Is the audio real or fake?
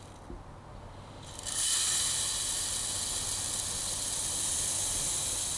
real